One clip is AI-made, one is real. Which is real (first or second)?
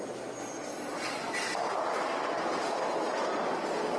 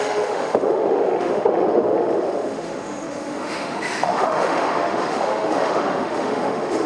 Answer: first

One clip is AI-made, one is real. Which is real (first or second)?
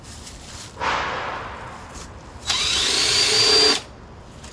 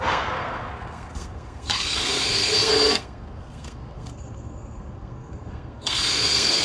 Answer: first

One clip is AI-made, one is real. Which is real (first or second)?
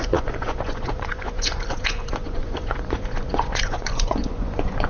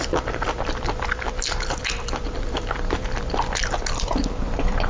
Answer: second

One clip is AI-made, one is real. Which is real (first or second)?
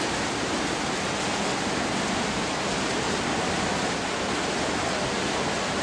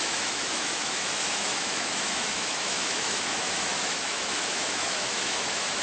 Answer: first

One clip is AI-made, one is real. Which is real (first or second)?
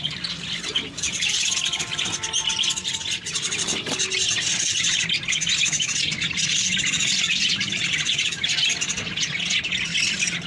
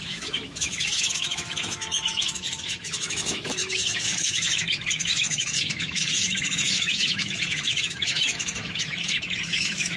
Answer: first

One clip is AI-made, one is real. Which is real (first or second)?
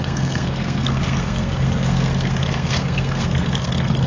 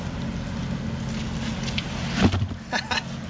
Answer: second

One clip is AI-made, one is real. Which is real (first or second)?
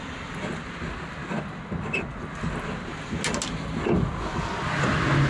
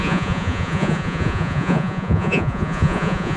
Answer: first